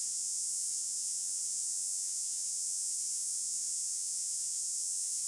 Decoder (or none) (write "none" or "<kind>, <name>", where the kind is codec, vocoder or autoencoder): vocoder, Vocos